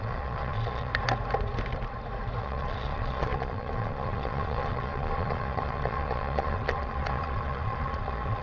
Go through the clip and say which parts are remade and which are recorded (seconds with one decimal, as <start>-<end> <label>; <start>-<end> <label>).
0.0-0.9 remade; 0.9-2.4 recorded; 2.4-8.4 remade